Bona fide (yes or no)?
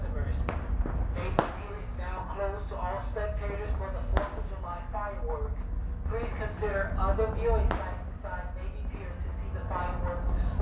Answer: yes